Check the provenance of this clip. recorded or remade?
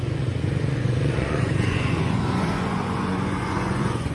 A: remade